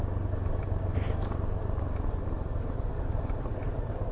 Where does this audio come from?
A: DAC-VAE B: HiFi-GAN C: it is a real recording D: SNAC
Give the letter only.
C